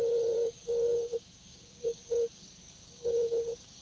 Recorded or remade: remade